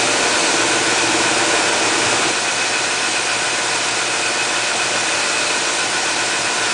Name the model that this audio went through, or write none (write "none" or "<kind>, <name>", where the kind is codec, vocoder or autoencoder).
none